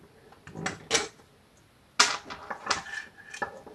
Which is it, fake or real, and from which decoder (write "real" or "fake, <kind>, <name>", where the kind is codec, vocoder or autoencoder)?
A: real